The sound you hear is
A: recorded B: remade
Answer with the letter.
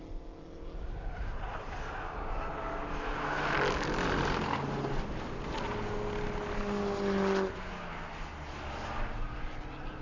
A